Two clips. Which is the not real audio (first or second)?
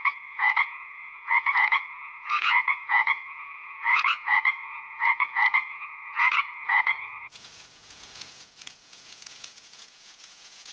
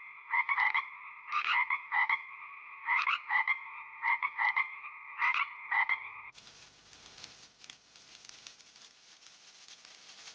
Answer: first